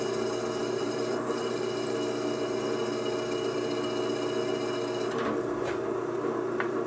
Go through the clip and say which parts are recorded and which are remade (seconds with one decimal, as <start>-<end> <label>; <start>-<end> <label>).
0.0-0.6 recorded; 0.6-1.6 remade; 1.6-6.9 recorded